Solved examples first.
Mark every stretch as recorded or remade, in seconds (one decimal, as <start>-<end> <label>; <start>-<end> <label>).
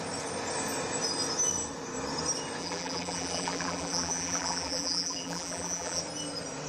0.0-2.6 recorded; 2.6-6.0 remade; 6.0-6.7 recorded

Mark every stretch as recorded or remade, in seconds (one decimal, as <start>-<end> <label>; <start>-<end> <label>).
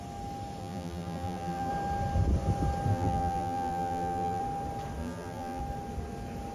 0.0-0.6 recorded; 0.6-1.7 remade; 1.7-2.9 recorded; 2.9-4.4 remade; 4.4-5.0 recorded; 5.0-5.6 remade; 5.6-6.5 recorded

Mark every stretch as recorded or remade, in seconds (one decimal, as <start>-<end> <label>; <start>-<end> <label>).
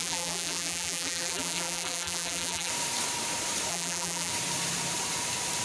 0.0-2.7 remade; 2.7-3.7 recorded; 3.7-4.3 remade; 4.3-5.6 recorded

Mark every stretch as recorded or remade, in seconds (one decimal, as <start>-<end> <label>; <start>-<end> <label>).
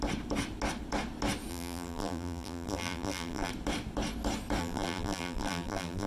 0.0-1.5 recorded; 1.5-3.5 remade; 3.5-4.6 recorded; 4.6-6.1 remade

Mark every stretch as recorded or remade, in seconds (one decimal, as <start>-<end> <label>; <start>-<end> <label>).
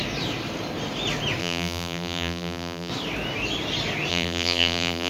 0.0-1.4 recorded; 1.4-2.9 remade; 2.9-4.1 recorded; 4.1-5.1 remade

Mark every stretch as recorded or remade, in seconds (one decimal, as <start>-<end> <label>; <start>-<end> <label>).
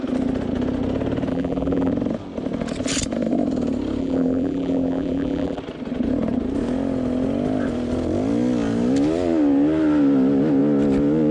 0.0-1.3 recorded; 1.3-1.9 remade; 1.9-4.0 recorded; 4.0-5.6 remade; 5.6-11.3 recorded